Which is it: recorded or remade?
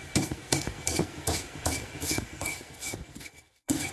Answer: remade